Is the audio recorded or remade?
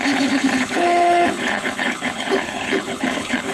remade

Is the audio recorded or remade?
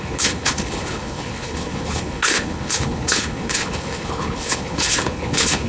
remade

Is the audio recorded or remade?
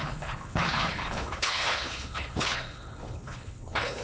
remade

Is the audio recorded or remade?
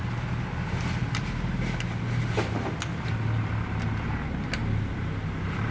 recorded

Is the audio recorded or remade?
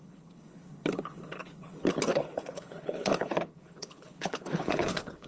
remade